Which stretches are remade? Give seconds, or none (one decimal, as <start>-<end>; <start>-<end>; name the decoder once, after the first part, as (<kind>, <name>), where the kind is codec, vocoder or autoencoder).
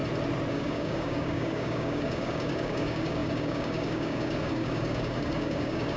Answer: 0.5-6.0 (codec, DAC)